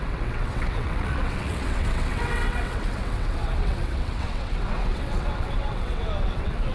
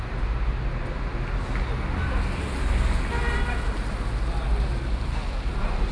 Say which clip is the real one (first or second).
second